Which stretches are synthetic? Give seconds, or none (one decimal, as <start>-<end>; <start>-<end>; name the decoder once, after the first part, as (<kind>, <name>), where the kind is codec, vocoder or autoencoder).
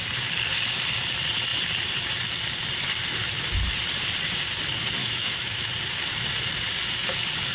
5.0-5.7 (autoencoder, DAC-VAE)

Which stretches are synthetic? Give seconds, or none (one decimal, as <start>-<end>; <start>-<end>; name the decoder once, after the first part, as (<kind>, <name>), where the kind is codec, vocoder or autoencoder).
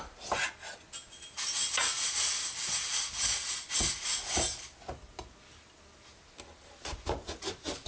none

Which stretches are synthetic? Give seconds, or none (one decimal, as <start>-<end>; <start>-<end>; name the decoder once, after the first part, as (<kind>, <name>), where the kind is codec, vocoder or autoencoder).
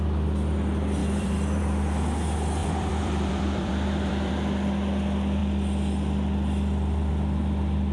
1.0-1.6 (vocoder, BigVGAN v2); 2.6-4.3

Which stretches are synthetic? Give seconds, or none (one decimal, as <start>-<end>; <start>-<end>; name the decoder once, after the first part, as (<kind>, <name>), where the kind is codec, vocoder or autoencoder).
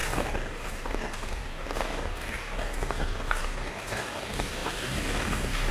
0.0-5.7 (codec, DAC)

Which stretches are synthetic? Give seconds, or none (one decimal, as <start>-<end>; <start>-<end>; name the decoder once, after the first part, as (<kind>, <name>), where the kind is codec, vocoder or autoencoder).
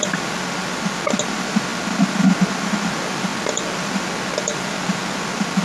none